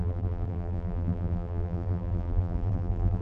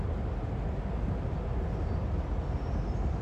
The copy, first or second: first